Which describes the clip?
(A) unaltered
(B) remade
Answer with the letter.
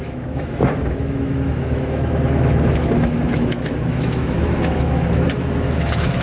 B